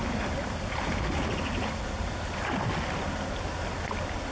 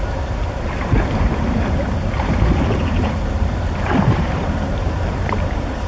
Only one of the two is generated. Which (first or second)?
second